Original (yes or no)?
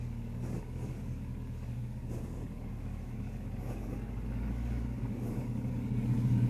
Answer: no